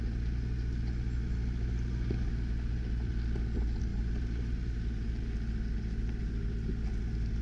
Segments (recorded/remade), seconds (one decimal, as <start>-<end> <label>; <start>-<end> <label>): 0.0-3.9 recorded; 3.9-5.1 remade; 5.1-7.4 recorded

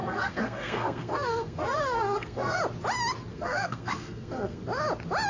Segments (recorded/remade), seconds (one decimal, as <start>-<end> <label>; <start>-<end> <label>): 0.0-2.6 remade; 2.6-3.3 recorded; 3.3-4.6 remade; 4.6-5.3 recorded

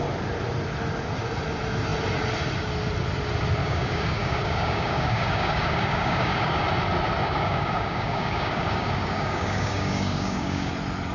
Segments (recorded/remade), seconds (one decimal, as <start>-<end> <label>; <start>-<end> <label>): 0.0-3.6 recorded; 3.6-6.6 remade; 6.6-7.2 recorded; 7.2-10.7 remade; 10.7-11.1 recorded